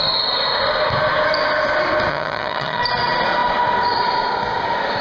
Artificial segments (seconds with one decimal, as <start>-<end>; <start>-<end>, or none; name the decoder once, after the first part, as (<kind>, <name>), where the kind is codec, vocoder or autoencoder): 2.1-2.8 (vocoder, HiFi-GAN)